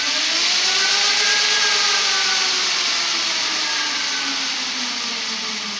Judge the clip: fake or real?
real